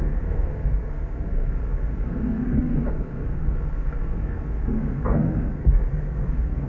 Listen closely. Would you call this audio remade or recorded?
remade